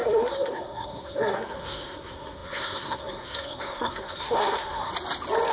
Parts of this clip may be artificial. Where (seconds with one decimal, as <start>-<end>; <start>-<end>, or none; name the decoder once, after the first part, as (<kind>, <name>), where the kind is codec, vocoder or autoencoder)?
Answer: 0.0-4.9 (codec, SNAC)